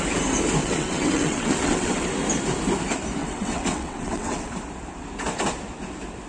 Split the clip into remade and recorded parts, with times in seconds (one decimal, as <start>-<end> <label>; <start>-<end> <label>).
0.0-0.6 recorded; 0.6-2.1 remade; 2.1-3.2 recorded; 3.2-4.5 remade; 4.5-6.3 recorded